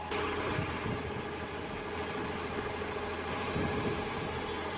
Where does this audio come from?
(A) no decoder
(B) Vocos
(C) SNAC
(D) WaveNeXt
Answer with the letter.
A